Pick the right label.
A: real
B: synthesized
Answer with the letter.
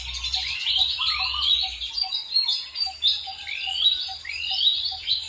A